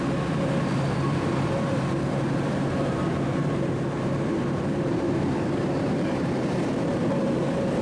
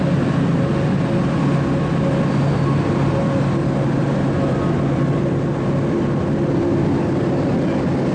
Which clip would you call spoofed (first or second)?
first